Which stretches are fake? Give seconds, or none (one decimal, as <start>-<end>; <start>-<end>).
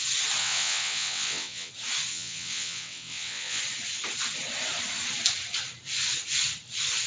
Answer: 0.4-1.7; 2.1-3.6